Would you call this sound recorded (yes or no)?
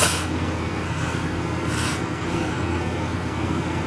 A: no